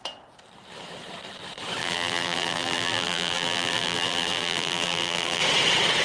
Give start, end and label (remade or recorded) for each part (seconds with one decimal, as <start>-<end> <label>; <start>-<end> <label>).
0.0-1.8 recorded; 1.8-5.4 remade; 5.4-6.0 recorded